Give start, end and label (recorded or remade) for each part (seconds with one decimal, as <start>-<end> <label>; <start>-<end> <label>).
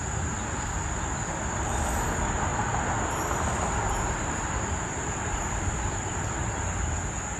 0.0-7.4 recorded